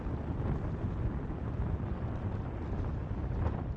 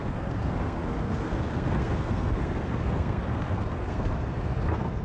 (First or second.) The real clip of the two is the first